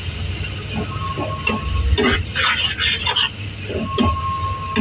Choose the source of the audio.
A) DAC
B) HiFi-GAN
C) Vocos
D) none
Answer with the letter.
D